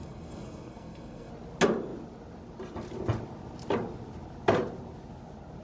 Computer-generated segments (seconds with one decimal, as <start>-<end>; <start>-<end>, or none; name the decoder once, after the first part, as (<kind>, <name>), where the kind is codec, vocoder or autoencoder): 0.0-1.3 (codec, SNAC)

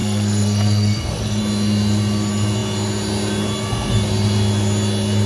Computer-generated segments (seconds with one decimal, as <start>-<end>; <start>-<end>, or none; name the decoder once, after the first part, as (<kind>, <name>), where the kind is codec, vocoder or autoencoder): 0.0-1.4 (codec, SNAC)